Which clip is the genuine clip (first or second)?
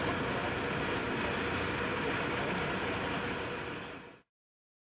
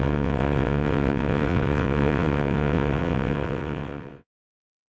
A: first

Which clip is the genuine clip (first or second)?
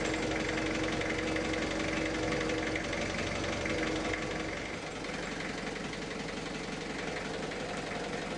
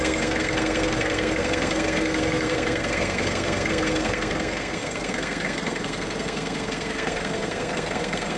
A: first